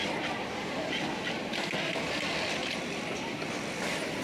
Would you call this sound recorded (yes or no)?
no